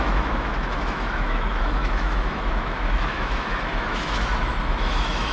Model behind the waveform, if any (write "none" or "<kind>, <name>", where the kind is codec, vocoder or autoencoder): autoencoder, DAC-VAE